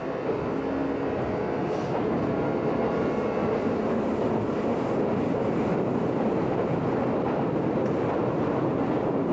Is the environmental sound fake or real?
real